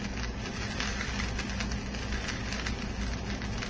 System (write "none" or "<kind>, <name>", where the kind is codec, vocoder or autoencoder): none